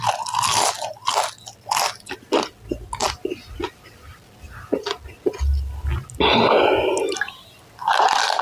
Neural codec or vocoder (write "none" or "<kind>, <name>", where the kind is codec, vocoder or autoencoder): none